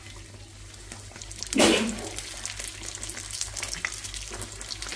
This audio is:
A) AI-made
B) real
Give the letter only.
B